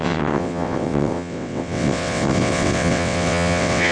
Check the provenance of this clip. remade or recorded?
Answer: remade